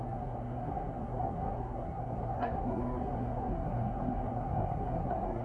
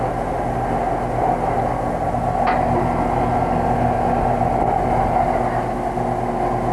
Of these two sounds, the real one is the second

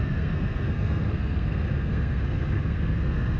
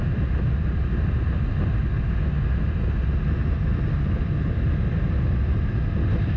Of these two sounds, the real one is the second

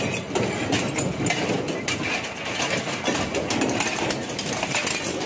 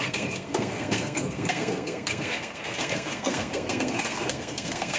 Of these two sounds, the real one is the first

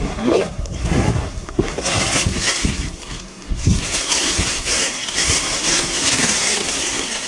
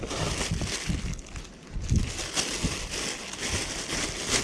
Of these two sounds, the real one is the second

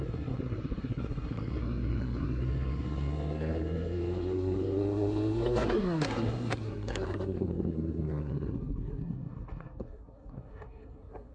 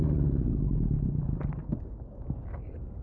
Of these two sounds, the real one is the second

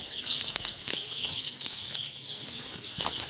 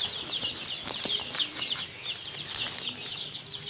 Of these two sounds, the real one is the second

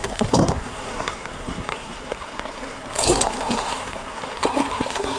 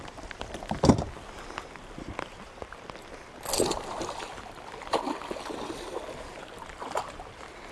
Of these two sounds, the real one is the second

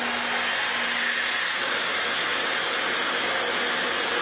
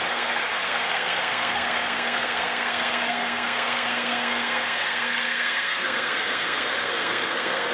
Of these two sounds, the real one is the first